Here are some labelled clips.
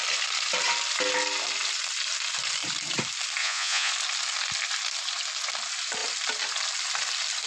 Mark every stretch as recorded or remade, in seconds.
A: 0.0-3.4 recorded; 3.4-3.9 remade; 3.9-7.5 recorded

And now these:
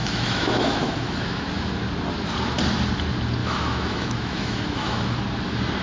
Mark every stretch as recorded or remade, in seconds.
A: 0.0-1.5 remade; 1.5-3.4 recorded; 3.4-5.0 remade; 5.0-5.8 recorded

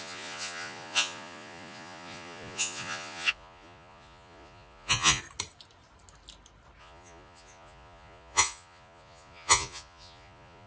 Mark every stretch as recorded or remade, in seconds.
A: 0.0-5.2 remade; 5.2-6.8 recorded; 6.8-10.7 remade

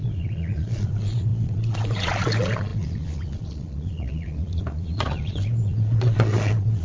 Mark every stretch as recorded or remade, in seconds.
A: 0.0-6.8 remade